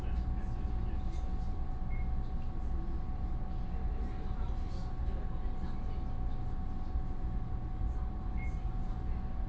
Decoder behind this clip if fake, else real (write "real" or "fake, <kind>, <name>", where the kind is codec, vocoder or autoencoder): real